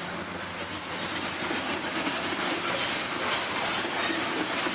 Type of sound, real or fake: real